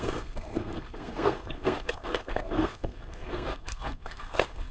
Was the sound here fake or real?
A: fake